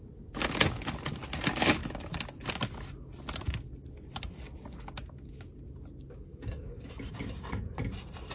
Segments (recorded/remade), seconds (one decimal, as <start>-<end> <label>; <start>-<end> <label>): 0.0-6.3 recorded; 6.3-6.9 remade; 6.9-8.3 recorded